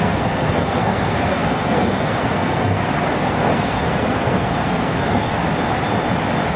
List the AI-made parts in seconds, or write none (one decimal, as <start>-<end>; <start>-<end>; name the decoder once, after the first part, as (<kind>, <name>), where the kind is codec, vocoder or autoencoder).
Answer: 0.0-5.4 (codec, SNAC)